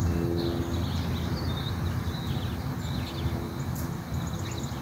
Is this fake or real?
real